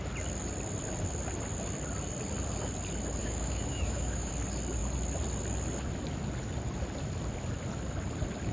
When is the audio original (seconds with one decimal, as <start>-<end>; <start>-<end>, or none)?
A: 0.0-3.2; 4.3-8.5